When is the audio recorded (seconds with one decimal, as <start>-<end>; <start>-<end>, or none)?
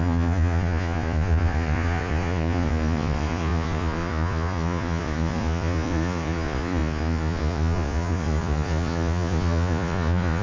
none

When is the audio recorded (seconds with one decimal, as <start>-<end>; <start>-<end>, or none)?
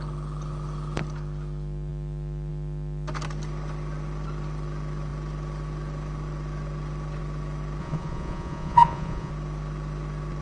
0.0-7.8; 9.3-10.4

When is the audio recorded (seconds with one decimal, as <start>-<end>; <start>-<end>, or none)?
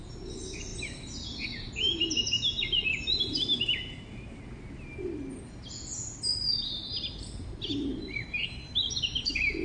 0.0-9.6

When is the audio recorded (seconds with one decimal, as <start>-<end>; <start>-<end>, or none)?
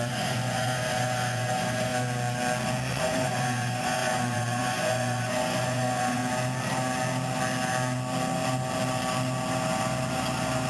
1.9-2.9; 6.2-10.7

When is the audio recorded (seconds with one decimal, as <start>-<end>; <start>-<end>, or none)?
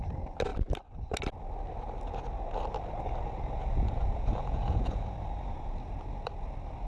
0.0-3.6; 5.0-6.9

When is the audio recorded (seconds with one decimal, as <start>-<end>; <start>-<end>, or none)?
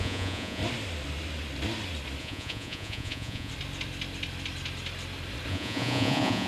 0.6-2.2; 3.5-5.5